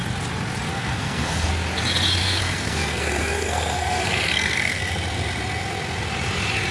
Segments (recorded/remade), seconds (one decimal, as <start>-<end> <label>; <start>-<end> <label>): 0.0-0.7 recorded; 0.7-1.5 remade; 1.5-2.2 recorded; 2.2-4.8 remade; 4.8-6.7 recorded